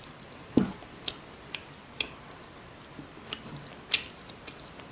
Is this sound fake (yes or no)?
no